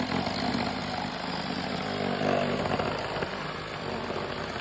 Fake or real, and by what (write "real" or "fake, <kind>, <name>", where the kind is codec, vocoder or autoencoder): real